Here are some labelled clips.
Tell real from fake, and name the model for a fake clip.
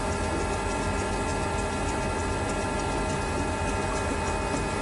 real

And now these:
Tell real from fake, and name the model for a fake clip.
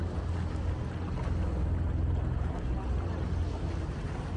real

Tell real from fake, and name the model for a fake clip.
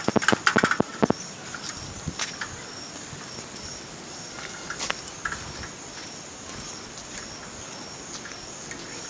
real